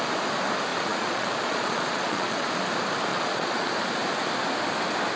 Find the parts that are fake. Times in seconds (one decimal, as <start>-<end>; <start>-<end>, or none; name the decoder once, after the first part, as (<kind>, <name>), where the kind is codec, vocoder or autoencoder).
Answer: 0.7-2.5 (vocoder, Vocos); 3.1-3.7